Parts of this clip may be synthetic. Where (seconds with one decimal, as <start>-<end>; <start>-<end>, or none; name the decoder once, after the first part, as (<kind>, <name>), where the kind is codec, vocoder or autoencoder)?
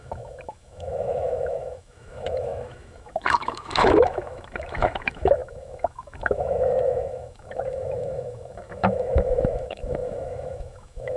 0.0-11.2 (autoencoder, DAC-VAE)